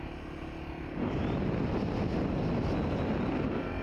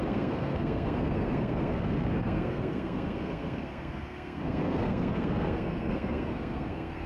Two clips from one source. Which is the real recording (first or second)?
first